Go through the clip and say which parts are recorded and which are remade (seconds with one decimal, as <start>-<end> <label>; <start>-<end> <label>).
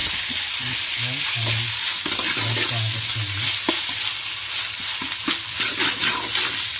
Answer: 0.0-6.8 recorded